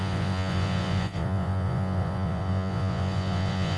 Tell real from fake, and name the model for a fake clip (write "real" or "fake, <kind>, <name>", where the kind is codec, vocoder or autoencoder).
fake, vocoder, Vocos